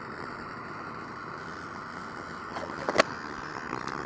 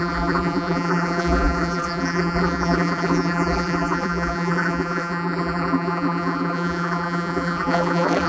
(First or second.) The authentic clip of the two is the first